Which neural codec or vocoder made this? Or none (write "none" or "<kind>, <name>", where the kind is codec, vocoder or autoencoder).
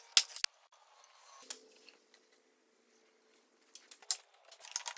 none